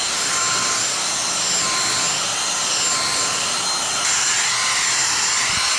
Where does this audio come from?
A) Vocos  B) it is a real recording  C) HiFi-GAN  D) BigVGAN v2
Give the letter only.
B